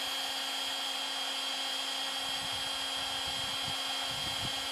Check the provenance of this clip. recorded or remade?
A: recorded